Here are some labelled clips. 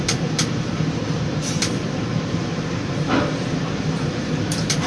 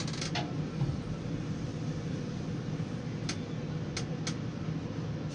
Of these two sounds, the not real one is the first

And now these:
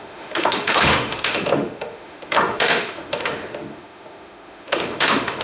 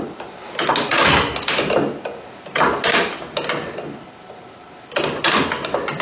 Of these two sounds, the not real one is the first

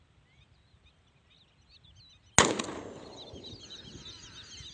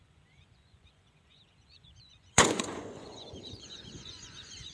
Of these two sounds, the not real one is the second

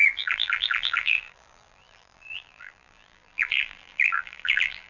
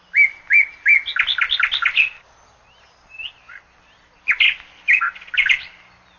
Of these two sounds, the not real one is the first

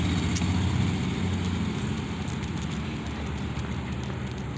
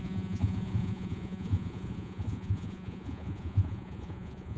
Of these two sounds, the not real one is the second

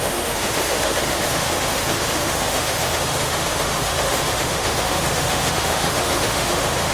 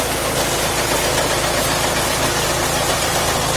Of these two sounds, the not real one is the first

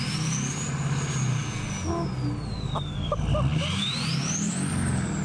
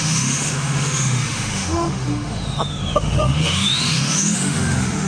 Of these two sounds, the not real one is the second